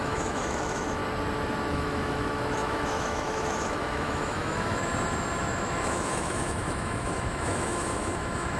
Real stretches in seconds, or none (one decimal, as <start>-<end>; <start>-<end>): 1.0-1.7; 4.9-5.4